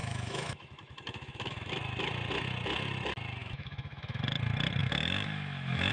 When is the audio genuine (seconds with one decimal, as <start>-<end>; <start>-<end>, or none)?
1.7-3.4; 4.2-4.8